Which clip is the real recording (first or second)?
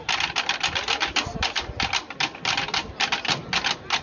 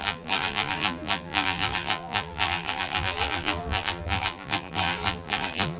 first